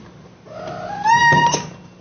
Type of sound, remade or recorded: recorded